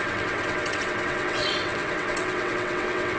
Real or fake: fake